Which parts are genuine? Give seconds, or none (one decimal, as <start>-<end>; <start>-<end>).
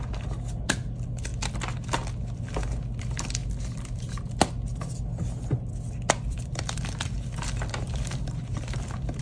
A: 1.3-3.0; 3.4-6.2